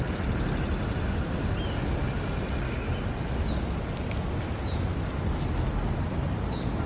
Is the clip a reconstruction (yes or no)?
no